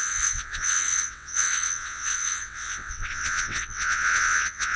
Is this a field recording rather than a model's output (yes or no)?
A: no